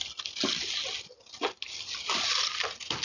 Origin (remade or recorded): recorded